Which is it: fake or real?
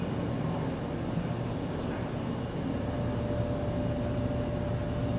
real